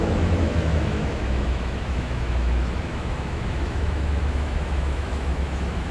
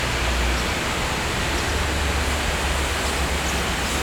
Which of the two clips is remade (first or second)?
first